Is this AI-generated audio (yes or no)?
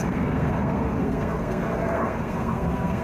yes